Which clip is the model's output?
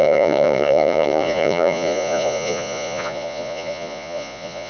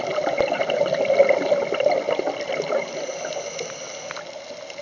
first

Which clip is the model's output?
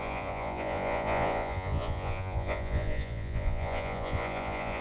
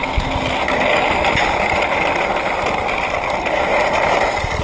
first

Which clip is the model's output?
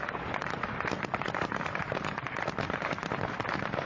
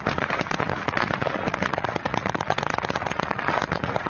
second